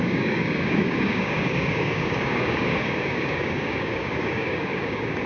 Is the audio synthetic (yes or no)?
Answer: yes